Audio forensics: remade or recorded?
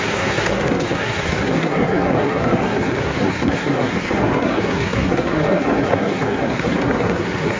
remade